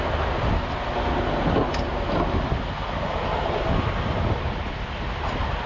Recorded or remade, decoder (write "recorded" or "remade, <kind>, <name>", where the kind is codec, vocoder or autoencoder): recorded